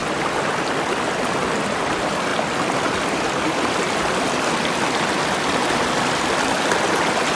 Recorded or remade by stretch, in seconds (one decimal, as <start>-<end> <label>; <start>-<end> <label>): 0.0-7.4 recorded